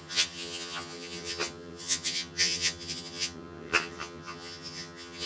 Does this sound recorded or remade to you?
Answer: remade